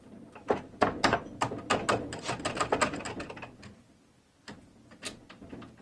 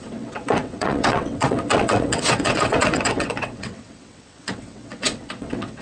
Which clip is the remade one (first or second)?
second